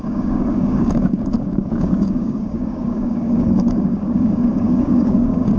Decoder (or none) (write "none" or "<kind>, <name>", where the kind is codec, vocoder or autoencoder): codec, DAC